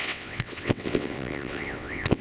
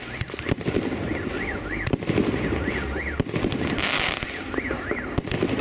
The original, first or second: second